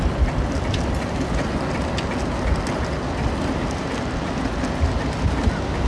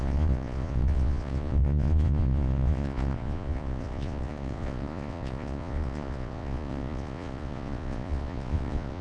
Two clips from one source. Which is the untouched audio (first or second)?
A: first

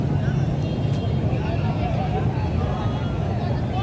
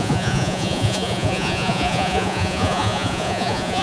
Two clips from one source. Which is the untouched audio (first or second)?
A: first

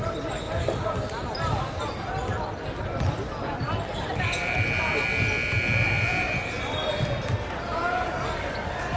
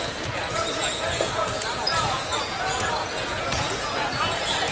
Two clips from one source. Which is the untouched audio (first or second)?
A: first